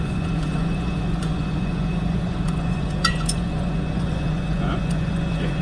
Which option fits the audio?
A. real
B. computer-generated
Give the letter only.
B